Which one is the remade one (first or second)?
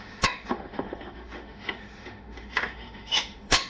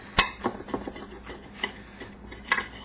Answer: first